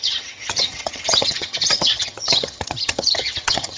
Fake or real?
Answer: fake